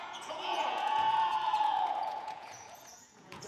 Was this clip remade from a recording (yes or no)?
yes